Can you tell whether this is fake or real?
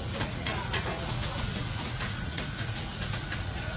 fake